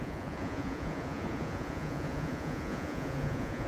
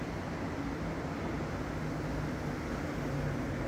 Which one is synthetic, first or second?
first